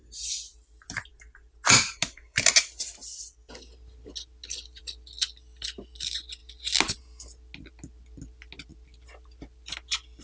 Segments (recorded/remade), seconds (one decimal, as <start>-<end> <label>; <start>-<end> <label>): 0.0-10.2 recorded